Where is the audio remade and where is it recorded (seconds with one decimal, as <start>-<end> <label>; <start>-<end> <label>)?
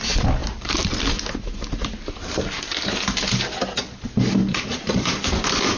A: 0.0-0.4 recorded; 0.4-1.0 remade; 1.0-4.5 recorded; 4.5-5.2 remade; 5.2-5.8 recorded